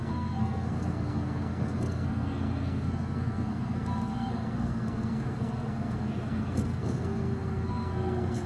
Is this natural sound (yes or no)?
no